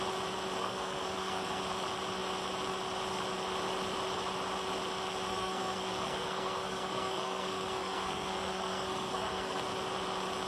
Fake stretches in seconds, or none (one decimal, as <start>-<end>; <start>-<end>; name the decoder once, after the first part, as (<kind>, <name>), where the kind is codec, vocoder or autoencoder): 0.6-1.6 (codec, SNAC); 5.3-9.6